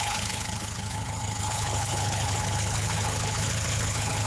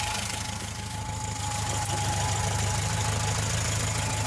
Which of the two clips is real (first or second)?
second